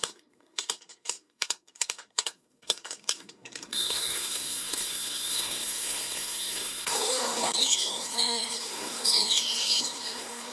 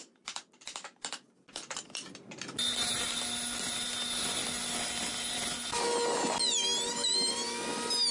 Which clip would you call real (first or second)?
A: second